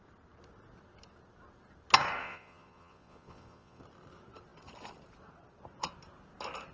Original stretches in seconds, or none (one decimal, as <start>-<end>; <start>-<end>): 0.0-2.2; 3.8-6.7